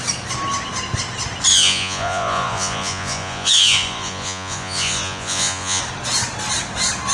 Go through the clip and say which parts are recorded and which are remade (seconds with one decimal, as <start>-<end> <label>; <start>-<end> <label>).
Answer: 0.0-1.5 recorded; 1.5-5.8 remade; 5.8-7.1 recorded